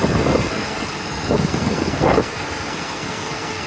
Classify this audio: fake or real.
fake